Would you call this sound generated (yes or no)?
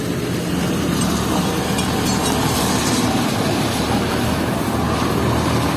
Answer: no